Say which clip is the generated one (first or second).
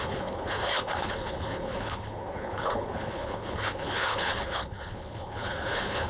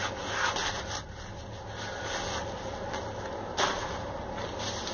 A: first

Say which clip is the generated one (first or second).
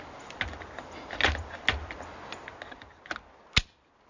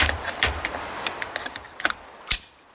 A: second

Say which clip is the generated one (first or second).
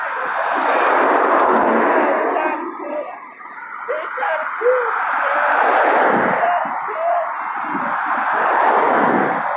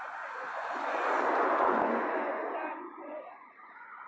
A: second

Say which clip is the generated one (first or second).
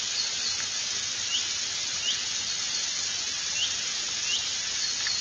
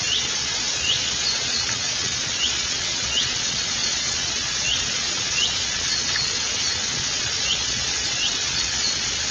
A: second